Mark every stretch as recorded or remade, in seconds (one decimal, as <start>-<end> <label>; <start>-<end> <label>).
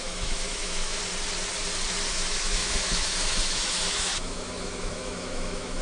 0.0-1.0 remade; 1.0-2.1 recorded; 2.1-5.8 remade